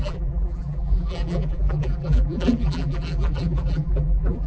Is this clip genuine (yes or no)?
no